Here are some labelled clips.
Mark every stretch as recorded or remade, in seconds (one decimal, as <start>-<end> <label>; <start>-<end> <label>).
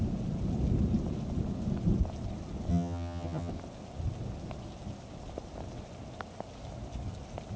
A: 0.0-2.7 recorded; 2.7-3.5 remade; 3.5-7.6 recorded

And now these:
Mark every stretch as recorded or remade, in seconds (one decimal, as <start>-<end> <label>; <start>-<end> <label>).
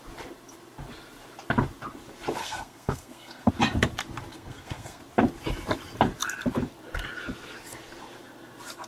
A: 0.0-2.4 recorded; 2.4-3.5 remade; 3.5-4.3 recorded; 4.3-5.0 remade; 5.0-8.9 recorded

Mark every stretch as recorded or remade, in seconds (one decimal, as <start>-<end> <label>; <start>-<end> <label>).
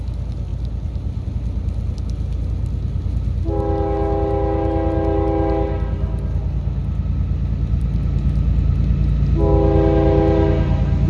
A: 0.0-11.1 recorded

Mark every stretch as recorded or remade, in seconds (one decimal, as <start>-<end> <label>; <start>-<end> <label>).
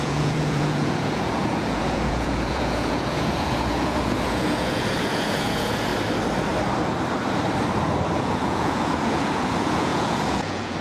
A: 0.0-5.9 remade; 5.9-8.2 recorded; 8.2-10.8 remade